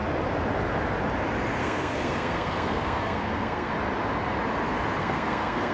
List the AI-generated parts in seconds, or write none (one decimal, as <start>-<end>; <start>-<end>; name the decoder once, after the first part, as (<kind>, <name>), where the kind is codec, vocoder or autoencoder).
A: 1.6-3.7 (codec, SNAC); 5.0-5.7